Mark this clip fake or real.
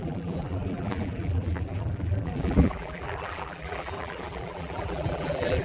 fake